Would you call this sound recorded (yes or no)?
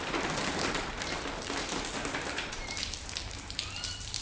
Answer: no